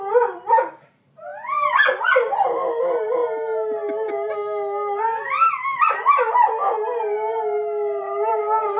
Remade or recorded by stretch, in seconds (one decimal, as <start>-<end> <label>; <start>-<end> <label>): 0.0-1.3 remade; 1.3-2.0 recorded; 2.0-3.2 remade; 3.2-8.0 recorded; 8.0-8.8 remade